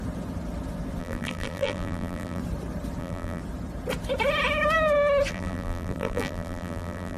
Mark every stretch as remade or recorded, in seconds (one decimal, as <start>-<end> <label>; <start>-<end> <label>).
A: 0.0-1.0 recorded; 1.0-2.4 remade; 2.4-3.0 recorded; 3.0-3.4 remade; 3.4-5.3 recorded; 5.3-7.2 remade